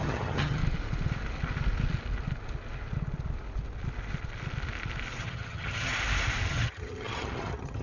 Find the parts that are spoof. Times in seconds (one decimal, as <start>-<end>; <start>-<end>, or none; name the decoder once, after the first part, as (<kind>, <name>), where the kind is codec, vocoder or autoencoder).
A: 0.0-0.6 (vocoder, HiFi-GAN); 5.2-5.9; 6.5-7.8